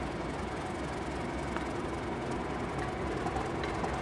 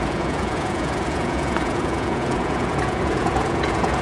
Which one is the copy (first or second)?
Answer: second